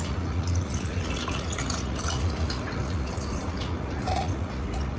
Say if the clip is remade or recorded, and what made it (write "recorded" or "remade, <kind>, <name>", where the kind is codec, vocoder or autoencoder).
remade, vocoder, Vocos